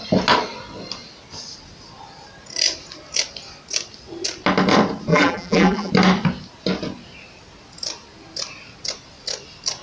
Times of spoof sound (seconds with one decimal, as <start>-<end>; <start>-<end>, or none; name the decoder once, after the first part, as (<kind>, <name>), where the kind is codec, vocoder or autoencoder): 5.1-5.9 (vocoder, BigVGAN v2)